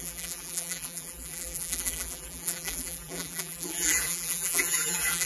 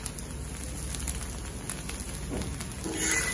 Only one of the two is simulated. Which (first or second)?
first